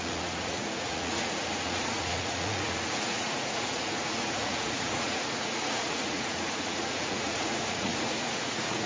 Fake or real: fake